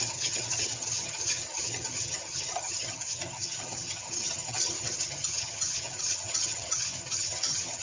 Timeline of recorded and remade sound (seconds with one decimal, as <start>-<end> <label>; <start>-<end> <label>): 0.0-7.8 remade